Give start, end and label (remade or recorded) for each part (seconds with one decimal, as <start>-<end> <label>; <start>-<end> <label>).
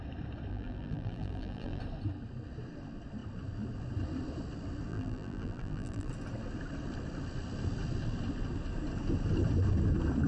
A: 0.0-0.5 recorded; 0.5-1.8 remade; 1.8-4.9 recorded; 4.9-6.1 remade; 6.1-10.3 recorded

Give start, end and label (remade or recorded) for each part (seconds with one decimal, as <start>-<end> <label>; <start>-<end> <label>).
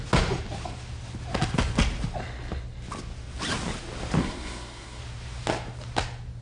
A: 0.0-4.2 recorded; 4.2-5.0 remade; 5.0-6.4 recorded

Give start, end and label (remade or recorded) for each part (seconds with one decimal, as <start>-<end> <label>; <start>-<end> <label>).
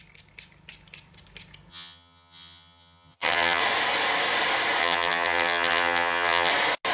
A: 0.0-1.7 recorded; 1.7-3.6 remade; 3.6-4.8 recorded; 4.8-6.5 remade; 6.5-6.9 recorded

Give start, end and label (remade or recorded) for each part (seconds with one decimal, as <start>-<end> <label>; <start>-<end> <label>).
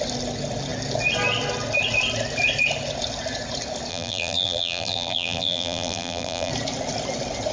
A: 0.0-3.9 recorded; 3.9-6.5 remade; 6.5-7.5 recorded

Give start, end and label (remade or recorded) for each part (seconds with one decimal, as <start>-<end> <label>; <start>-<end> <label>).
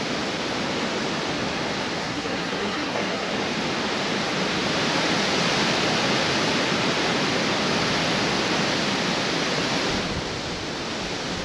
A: 0.0-2.0 recorded; 2.0-3.3 remade; 3.3-11.4 recorded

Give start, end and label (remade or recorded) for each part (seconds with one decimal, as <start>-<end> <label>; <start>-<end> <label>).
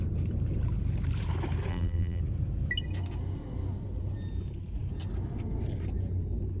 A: 0.0-1.7 recorded; 1.7-2.2 remade; 2.2-6.6 recorded